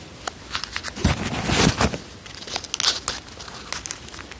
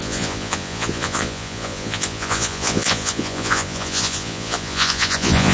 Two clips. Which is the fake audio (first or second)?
second